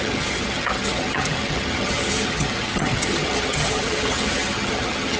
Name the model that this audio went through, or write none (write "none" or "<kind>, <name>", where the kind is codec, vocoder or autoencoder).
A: vocoder, HiFi-GAN